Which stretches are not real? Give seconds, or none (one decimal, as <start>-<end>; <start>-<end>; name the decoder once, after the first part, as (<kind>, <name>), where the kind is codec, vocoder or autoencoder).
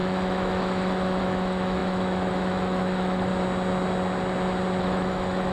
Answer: 0.0-3.3 (autoencoder, DAC-VAE); 4.8-5.5